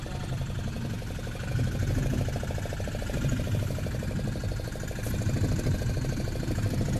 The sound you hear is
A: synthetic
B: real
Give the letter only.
B